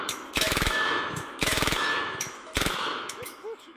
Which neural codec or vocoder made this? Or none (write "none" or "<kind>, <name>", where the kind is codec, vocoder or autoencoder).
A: autoencoder, DAC-VAE